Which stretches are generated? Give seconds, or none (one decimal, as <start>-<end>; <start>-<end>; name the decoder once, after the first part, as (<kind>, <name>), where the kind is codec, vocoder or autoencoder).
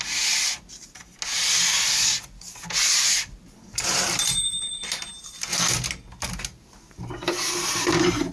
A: 2.8-5.0 (vocoder, BigVGAN v2); 7.0-8.3